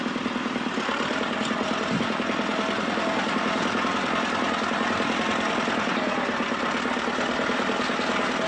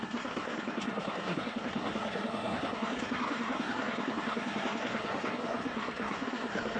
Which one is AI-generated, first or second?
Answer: second